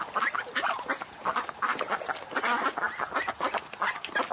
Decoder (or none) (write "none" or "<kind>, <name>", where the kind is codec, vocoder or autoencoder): none